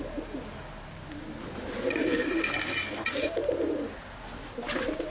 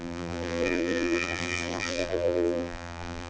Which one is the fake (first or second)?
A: second